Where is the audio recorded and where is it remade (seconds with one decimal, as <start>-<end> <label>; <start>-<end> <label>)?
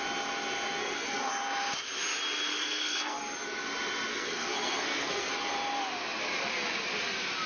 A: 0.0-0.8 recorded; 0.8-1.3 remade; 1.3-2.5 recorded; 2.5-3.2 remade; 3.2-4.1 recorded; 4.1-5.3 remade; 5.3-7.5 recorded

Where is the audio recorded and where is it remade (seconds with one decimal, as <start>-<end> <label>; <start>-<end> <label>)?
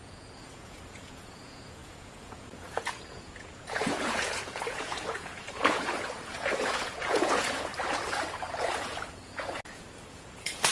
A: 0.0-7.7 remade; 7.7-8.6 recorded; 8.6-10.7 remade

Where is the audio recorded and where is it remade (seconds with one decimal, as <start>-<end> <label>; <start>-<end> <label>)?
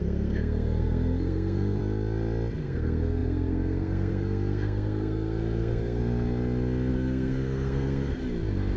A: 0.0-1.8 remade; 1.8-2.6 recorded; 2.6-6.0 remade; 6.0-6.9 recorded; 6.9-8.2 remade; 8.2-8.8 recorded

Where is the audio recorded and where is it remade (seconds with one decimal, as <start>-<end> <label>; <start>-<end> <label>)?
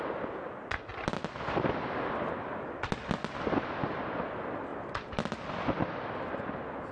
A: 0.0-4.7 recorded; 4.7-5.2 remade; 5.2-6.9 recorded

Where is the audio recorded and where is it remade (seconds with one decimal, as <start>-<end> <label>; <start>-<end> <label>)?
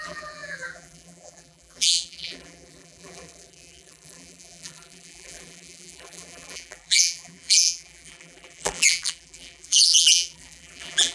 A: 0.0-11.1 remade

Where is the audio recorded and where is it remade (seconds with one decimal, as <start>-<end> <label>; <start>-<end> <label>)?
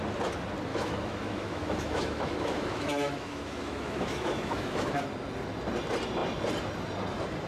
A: 0.0-0.7 recorded; 0.7-5.0 remade; 5.0-7.5 recorded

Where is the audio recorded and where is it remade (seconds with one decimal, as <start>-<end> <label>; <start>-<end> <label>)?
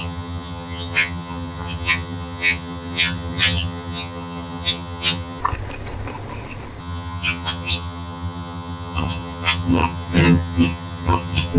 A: 0.0-5.4 remade; 5.4-6.8 recorded; 6.8-11.6 remade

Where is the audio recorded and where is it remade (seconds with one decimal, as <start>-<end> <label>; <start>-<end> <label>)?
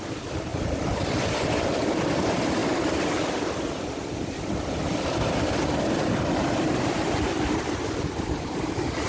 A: 0.0-0.5 remade; 0.5-1.3 recorded; 1.3-9.1 remade